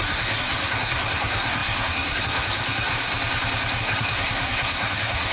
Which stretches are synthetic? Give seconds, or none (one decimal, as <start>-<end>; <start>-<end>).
0.0-2.9; 3.8-5.3